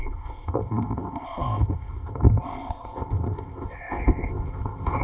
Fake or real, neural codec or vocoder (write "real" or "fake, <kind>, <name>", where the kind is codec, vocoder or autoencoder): fake, codec, ZipCodec